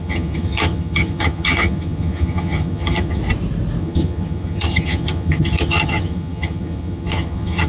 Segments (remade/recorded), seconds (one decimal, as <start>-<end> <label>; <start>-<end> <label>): 0.0-3.2 remade; 3.2-3.8 recorded; 3.8-7.7 remade